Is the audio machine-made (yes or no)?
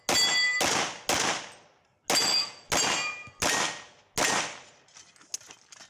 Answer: no